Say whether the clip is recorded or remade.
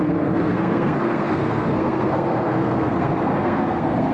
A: remade